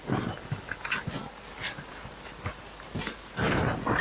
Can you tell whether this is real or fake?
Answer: real